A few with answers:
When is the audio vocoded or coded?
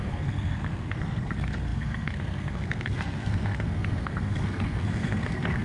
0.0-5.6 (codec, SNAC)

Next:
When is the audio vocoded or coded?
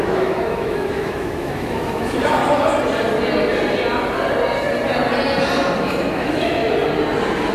0.0-2.4 (autoencoder, DAC-VAE); 5.8-6.6